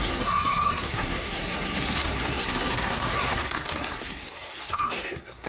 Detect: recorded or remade remade